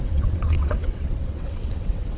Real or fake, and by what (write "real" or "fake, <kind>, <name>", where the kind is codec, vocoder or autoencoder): fake, vocoder, WaveNeXt